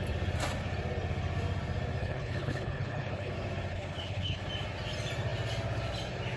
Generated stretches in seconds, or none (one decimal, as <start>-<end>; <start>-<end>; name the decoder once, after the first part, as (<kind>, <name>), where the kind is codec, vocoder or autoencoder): 2.0-3.3 (codec, HILCodec); 3.7-4.4